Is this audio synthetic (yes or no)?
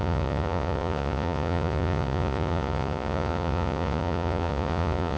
yes